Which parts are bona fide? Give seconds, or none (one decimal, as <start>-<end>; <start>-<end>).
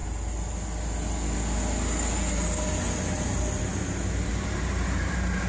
0.0-3.3